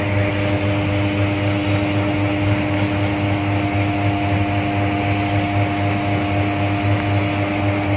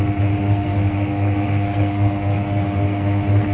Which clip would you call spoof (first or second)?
second